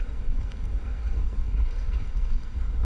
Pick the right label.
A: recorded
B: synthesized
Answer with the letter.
B